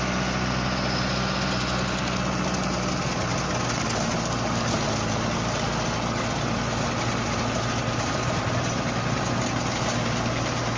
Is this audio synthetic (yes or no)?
no